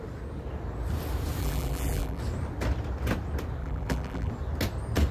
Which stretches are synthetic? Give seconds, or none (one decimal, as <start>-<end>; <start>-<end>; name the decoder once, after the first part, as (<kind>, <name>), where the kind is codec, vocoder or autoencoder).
1.4-2.2 (vocoder, BigVGAN v2); 3.6-4.3